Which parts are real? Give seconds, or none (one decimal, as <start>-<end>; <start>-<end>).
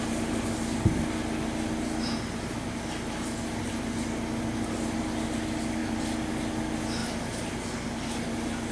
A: 0.0-8.7